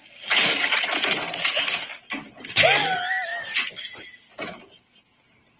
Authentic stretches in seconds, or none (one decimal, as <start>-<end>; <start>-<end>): 0.0-5.6